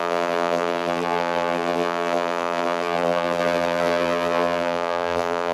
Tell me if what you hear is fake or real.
fake